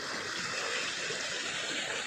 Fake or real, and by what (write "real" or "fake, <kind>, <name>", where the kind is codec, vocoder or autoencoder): real